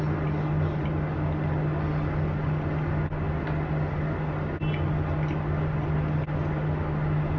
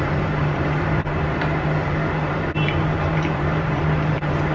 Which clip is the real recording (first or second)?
first